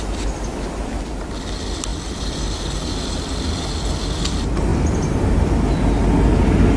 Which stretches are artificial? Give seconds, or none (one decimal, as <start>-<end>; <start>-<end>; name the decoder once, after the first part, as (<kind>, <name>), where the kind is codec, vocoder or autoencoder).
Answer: 1.9-2.6 (vocoder, BigVGAN v2); 4.7-5.5